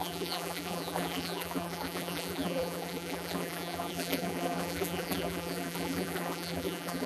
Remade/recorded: remade